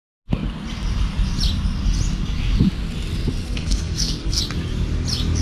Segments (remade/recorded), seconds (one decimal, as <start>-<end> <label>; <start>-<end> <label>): 0.0-3.4 recorded; 3.4-4.4 remade; 4.4-5.4 recorded